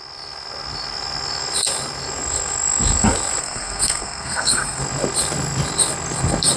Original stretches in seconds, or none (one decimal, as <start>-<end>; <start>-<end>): 0.0-3.4; 4.8-6.6

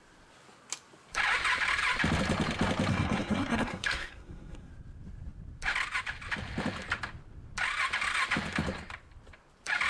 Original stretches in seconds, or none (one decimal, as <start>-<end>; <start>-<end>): 0.0-2.9; 4.7-9.9

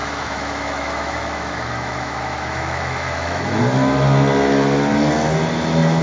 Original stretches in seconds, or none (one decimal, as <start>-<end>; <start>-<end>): 3.6-6.0

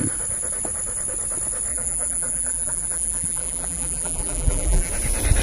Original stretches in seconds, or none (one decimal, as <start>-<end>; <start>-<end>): 0.0-1.7; 4.9-5.4

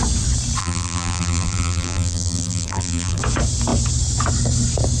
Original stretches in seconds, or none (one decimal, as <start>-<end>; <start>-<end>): 0.0-0.6; 3.2-5.0